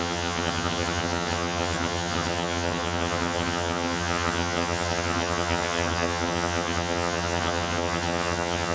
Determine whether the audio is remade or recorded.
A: remade